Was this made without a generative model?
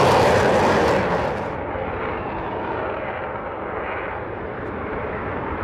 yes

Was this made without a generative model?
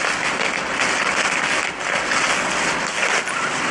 yes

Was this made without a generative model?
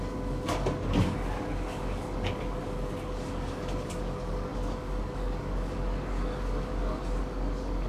no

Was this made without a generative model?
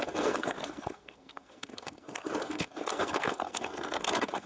no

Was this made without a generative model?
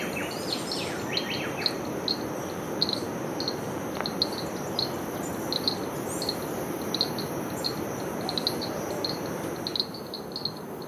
yes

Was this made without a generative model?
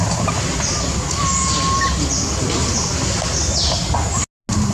yes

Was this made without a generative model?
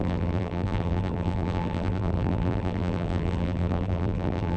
no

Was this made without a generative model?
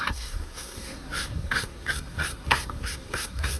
no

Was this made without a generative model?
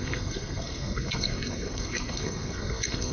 no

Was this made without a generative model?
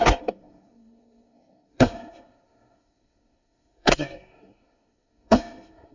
no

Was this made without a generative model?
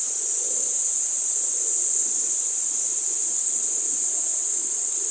no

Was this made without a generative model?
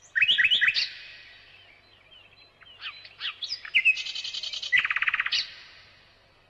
yes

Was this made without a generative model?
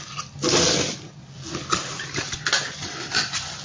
yes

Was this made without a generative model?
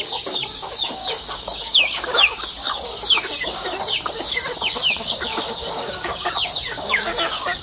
no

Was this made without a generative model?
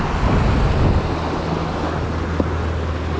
yes